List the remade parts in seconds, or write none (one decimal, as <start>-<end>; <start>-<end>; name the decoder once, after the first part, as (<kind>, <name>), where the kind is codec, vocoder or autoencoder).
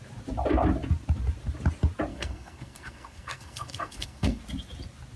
2.1-4.4 (codec, SNAC)